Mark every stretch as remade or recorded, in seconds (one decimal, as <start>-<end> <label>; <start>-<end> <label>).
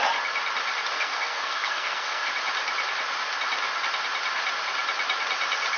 0.0-0.9 recorded; 0.9-2.3 remade; 2.3-5.8 recorded